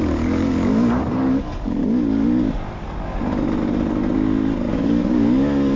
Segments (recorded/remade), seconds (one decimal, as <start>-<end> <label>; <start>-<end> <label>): 0.0-1.8 remade; 1.8-4.7 recorded; 4.7-5.8 remade